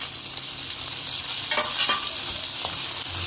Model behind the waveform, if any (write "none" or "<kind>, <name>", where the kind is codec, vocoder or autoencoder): none